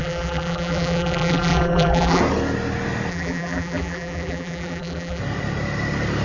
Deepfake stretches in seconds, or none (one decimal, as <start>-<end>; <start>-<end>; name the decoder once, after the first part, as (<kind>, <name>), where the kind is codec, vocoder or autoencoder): 0.0-2.2 (vocoder, BigVGAN v2); 3.1-5.2